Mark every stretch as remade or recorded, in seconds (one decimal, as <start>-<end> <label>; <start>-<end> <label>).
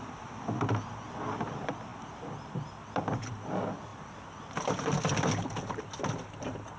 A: 0.0-6.8 recorded